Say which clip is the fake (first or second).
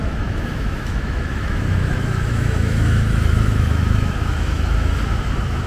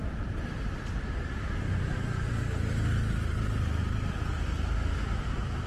first